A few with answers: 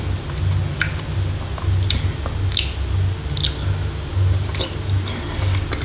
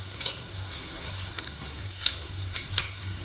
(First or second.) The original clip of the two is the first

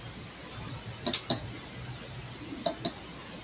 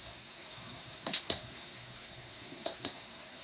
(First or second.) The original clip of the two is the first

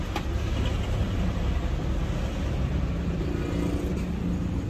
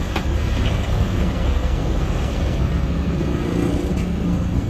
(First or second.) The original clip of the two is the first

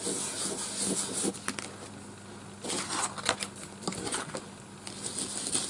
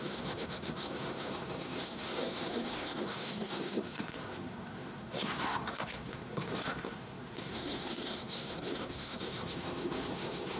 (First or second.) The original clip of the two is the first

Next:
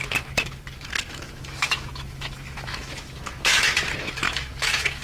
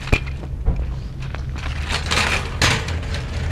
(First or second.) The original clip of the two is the second